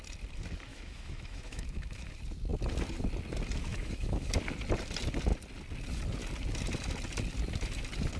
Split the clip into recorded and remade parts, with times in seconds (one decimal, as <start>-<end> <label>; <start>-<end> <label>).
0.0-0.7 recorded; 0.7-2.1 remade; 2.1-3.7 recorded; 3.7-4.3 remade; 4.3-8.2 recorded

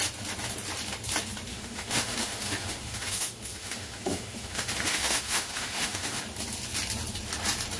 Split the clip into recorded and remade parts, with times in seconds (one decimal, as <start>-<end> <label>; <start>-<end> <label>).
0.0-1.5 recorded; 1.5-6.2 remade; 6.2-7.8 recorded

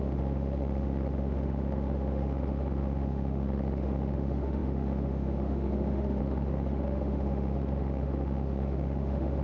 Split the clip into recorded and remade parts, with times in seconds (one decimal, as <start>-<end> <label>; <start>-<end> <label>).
0.0-9.4 remade

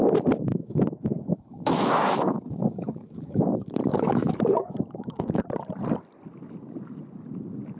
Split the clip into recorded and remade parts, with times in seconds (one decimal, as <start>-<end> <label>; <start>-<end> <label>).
0.0-0.5 recorded; 0.5-3.4 remade; 3.4-3.9 recorded; 3.9-5.4 remade; 5.4-7.8 recorded

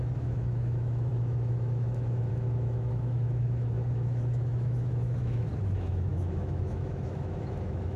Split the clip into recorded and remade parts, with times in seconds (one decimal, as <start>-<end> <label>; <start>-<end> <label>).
0.0-8.0 remade